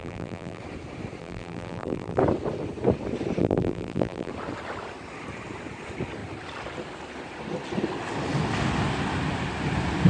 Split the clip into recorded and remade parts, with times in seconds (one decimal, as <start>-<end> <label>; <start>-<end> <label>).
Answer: 0.0-0.6 remade; 0.6-1.2 recorded; 1.2-2.2 remade; 2.2-3.4 recorded; 3.4-4.3 remade; 4.3-10.1 recorded

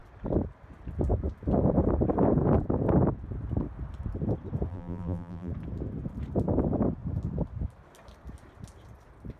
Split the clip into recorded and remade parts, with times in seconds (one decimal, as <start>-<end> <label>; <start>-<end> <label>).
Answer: 0.0-4.7 recorded; 4.7-5.5 remade; 5.5-9.4 recorded

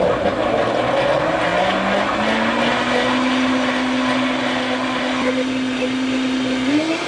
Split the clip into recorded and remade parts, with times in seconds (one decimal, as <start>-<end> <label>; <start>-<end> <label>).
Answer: 0.0-7.1 recorded

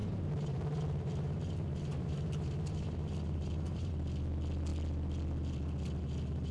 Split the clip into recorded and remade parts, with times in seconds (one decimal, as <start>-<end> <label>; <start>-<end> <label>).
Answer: 0.0-3.9 remade; 3.9-6.5 recorded

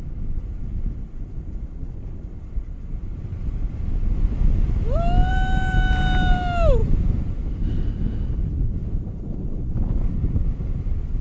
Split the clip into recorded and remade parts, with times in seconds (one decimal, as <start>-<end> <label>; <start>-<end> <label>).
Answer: 0.0-6.8 recorded; 6.8-7.4 remade; 7.4-8.8 recorded; 8.8-11.2 remade

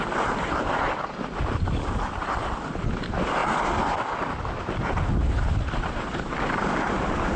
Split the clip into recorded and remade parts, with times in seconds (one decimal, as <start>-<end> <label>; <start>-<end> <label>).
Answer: 0.0-5.2 recorded; 5.2-7.4 remade

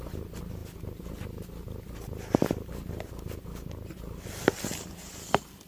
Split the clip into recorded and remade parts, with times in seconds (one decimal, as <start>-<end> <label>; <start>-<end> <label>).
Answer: 0.0-5.7 recorded